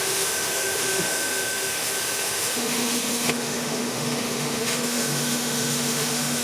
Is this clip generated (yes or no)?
yes